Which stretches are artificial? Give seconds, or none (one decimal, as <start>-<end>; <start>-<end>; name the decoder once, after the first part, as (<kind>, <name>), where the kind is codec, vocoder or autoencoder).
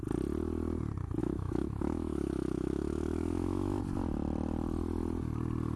1.2-3.8 (autoencoder, DAC-VAE)